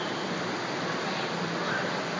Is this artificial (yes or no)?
no